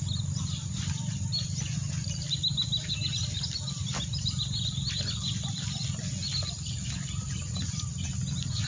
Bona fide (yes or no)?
yes